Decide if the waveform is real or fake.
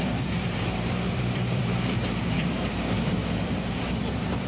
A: fake